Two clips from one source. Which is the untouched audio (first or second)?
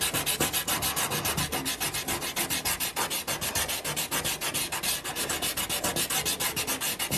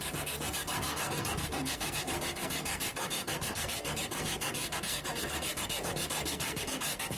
first